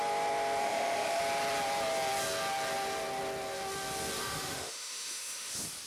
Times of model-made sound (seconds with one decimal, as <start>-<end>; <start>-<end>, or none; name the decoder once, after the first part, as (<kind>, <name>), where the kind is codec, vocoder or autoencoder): 0.6-1.2 (autoencoder, DAC-VAE); 4.2-5.5